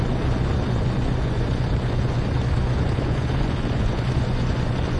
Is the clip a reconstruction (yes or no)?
yes